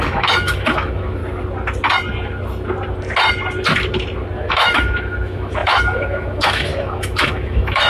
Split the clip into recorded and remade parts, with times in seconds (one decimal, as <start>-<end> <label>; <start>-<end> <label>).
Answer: 0.0-1.2 remade; 1.2-4.4 recorded; 4.4-7.9 remade